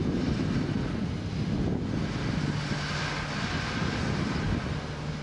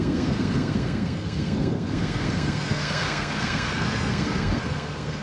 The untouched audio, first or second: first